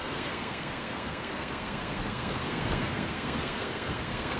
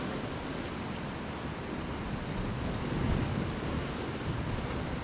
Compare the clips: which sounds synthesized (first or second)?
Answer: first